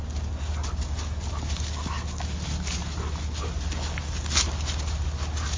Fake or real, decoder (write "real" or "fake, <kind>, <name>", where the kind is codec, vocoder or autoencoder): real